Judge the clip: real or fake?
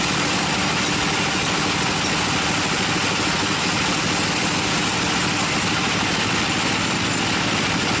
real